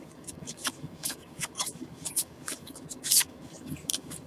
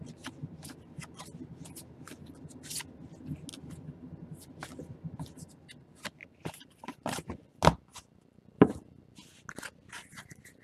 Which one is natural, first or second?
second